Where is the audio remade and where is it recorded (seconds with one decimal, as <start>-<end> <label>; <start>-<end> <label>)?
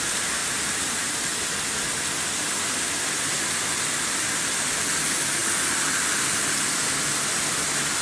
0.0-0.4 recorded; 0.4-1.3 remade; 1.3-8.0 recorded